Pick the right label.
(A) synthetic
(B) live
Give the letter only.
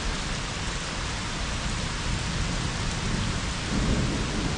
B